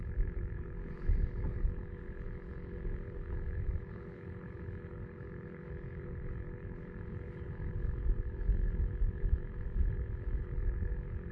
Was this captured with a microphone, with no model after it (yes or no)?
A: no